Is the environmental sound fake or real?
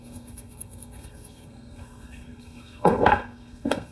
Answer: fake